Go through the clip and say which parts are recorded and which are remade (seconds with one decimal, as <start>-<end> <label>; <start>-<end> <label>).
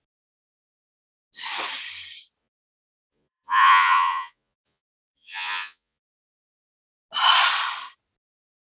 0.0-2.4 recorded; 2.4-6.2 remade; 6.2-8.6 recorded